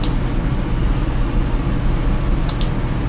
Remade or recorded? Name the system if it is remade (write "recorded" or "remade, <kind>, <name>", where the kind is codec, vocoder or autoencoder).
recorded